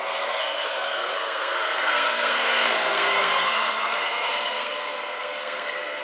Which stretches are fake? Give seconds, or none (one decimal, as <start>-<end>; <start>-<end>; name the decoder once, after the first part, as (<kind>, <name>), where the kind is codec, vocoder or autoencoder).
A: 0.0-6.0 (codec, SNAC)